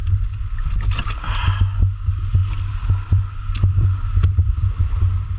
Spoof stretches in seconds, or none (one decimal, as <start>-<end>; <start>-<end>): none